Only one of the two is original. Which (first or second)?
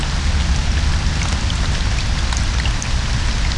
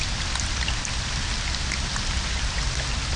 first